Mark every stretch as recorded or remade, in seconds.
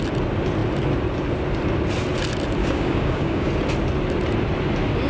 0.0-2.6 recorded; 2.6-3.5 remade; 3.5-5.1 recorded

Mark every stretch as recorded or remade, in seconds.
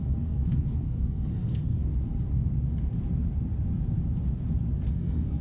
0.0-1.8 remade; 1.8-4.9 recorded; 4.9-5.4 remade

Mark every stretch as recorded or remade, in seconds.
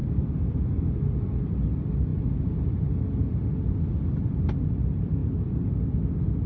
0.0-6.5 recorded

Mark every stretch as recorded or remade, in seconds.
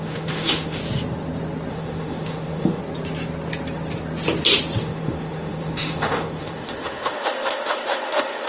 0.0-0.8 remade; 0.8-1.7 recorded; 1.7-2.8 remade; 2.8-4.8 recorded; 4.8-8.5 remade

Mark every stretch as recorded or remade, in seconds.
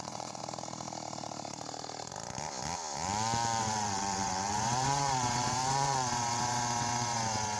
0.0-0.4 remade; 0.4-3.6 recorded; 3.6-7.6 remade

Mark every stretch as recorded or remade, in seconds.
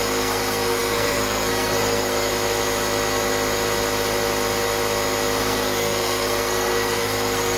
0.0-2.3 remade; 2.3-5.4 recorded; 5.4-7.6 remade